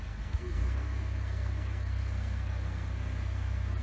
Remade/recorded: remade